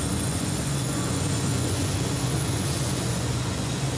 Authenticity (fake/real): fake